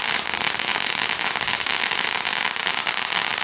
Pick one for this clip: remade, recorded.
recorded